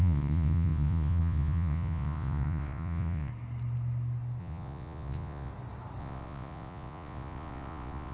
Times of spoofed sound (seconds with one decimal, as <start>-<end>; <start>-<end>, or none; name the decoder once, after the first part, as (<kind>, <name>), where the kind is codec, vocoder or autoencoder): 0.0-3.3 (vocoder, Vocos); 4.4-5.5; 6.0-8.1